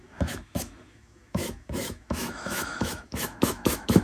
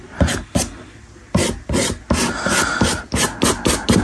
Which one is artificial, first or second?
first